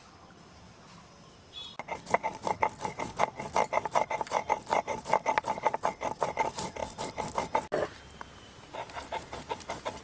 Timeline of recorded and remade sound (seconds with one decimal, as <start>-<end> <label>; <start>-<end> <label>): 0.0-10.0 recorded